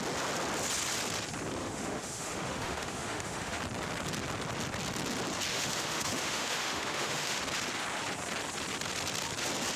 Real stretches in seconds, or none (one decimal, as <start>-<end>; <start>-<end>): 0.0-1.6; 3.6-5.5; 7.4-9.8